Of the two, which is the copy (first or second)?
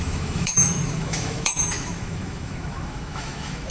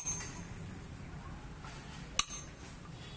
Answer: first